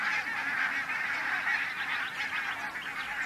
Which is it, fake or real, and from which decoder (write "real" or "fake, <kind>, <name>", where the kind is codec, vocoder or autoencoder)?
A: real